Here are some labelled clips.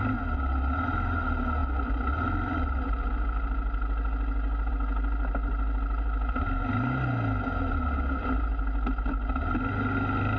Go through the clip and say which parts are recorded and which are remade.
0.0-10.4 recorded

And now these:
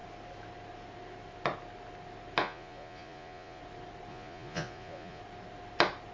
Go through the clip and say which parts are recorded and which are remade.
0.0-2.4 recorded; 2.4-3.6 remade; 3.6-4.1 recorded; 4.1-5.2 remade; 5.2-6.1 recorded

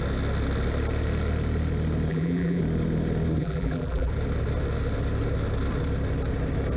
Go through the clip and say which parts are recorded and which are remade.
0.0-2.1 recorded; 2.1-2.6 remade; 2.6-3.4 recorded; 3.4-4.1 remade; 4.1-6.8 recorded